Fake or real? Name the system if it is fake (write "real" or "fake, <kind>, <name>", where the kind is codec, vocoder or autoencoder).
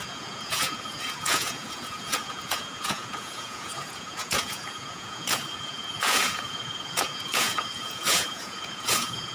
fake, vocoder, Vocos